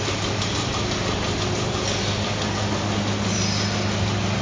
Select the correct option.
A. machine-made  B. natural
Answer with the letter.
B